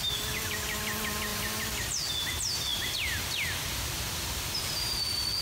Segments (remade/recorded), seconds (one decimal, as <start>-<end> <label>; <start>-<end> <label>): 0.0-5.4 recorded